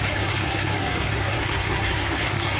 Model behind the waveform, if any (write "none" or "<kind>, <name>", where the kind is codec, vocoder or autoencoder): codec, SNAC